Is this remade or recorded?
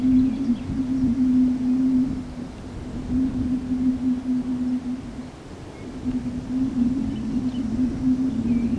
recorded